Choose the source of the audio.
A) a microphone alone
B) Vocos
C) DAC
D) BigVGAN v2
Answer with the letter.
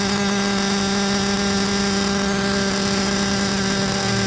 A